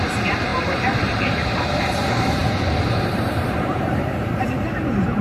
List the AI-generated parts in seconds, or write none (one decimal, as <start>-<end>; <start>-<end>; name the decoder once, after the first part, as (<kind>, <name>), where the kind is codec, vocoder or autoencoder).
0.0-5.2 (vocoder, BigVGAN v2)